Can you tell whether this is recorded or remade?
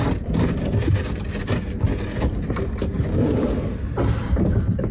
remade